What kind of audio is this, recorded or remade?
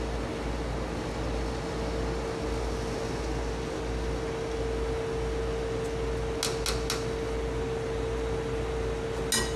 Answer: recorded